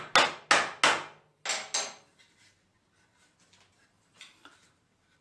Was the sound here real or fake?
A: real